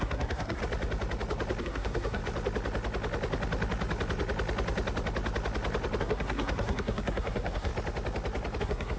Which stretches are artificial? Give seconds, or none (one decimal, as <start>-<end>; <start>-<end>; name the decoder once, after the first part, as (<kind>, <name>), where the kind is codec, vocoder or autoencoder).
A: 0.0-0.6 (codec, SNAC); 1.6-2.2; 6.0-7.7; 8.6-9.0